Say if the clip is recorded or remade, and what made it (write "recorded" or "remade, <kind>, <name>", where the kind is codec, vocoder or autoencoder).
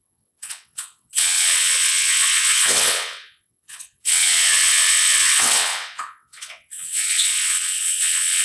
remade, vocoder, WaveNeXt